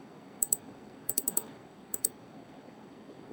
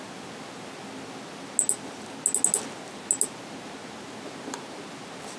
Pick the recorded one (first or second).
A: second